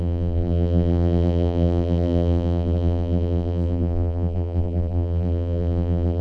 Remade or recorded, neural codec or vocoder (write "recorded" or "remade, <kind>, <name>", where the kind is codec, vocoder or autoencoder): remade, vocoder, BigVGAN v2